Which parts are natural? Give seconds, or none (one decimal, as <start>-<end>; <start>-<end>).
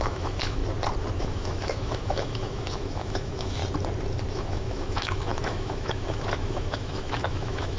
0.6-1.2; 3.6-4.3